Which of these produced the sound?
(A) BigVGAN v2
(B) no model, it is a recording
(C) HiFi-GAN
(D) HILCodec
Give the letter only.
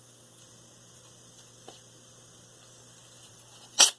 B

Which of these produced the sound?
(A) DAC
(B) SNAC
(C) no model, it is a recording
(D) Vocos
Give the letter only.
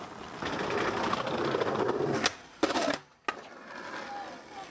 C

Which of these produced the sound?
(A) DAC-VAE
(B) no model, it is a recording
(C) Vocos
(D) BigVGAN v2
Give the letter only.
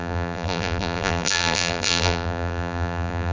D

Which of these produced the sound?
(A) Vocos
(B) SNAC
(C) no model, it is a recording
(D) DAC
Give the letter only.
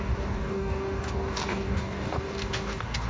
D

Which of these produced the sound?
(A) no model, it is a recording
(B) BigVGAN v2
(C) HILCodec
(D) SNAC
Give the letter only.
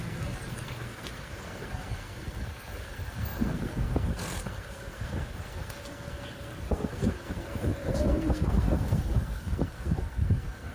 D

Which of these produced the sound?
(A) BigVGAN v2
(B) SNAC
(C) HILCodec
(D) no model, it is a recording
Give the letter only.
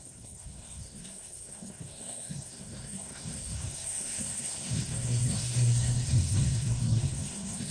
B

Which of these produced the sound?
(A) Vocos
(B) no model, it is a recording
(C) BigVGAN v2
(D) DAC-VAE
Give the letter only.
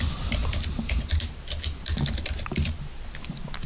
B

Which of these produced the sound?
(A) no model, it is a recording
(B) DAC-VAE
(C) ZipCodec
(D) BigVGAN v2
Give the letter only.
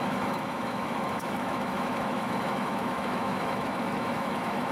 B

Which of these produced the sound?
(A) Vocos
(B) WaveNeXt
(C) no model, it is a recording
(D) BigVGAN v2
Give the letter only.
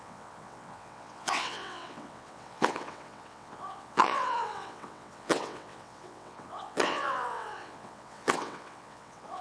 B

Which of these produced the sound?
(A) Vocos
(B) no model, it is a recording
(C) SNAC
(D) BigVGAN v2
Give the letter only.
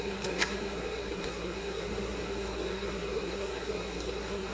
C